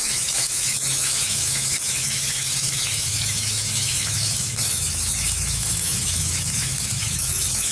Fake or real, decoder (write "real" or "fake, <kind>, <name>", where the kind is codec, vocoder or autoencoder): fake, autoencoder, DAC-VAE